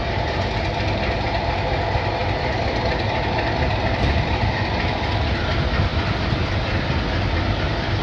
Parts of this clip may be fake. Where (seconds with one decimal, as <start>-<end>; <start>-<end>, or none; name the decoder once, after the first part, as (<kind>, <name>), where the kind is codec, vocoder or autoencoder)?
2.2-4.6 (vocoder, BigVGAN v2); 5.9-6.5